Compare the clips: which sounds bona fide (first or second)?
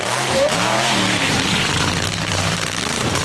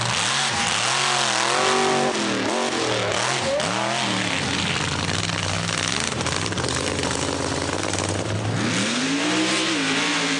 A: second